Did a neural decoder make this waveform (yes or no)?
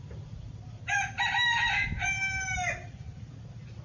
no